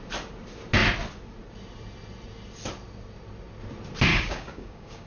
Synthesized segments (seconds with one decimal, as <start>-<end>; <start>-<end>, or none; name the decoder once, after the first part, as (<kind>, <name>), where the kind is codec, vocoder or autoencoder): 4.1-5.1 (codec, DAC)